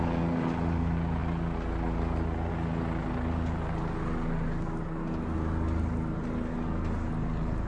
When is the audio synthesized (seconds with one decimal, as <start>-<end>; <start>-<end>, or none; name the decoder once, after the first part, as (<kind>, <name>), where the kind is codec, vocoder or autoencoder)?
none